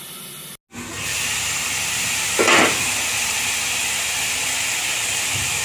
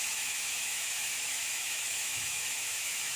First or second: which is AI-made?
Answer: second